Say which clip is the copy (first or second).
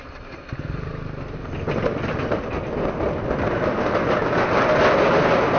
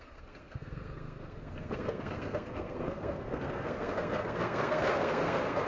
second